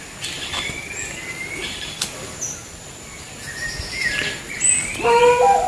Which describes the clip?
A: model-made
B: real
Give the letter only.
B